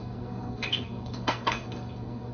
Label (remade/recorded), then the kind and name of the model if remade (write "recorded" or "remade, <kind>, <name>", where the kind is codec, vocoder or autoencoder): remade, codec, SNAC